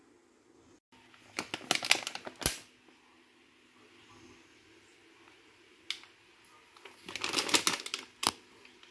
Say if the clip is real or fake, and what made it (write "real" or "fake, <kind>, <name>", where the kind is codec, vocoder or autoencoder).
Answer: real